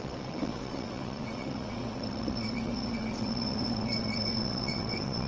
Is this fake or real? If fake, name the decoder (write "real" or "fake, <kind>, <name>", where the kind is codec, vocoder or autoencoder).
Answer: fake, vocoder, WaveNeXt